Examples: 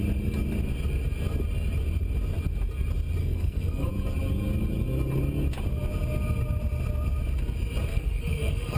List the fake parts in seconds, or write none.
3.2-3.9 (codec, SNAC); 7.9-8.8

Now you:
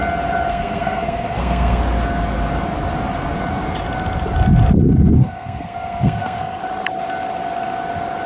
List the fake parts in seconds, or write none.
0.5-1.8 (codec, SNAC); 5.2-6.6

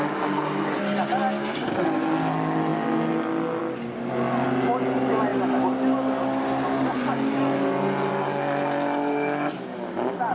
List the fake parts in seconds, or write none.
none

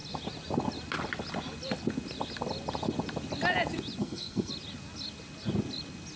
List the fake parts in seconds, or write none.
4.0-4.5 (codec, SNAC)

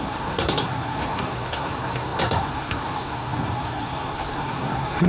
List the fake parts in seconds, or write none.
0.0-5.1 (codec, SNAC)

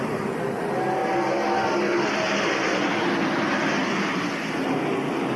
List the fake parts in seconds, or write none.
none

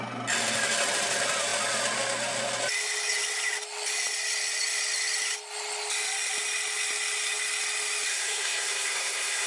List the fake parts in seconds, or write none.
8.1-9.5 (codec, SNAC)

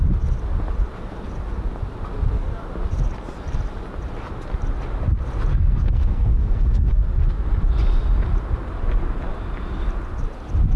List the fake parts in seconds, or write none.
5.5-6.9 (codec, SNAC)